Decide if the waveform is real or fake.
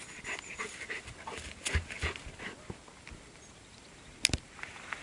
real